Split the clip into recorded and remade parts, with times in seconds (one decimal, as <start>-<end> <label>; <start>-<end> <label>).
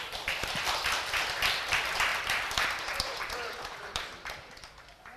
0.0-2.1 recorded; 2.1-5.2 remade